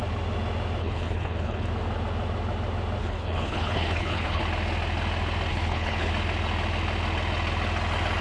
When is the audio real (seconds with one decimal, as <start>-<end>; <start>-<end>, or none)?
0.0-0.8; 1.7-3.0; 4.4-5.5; 6.1-8.2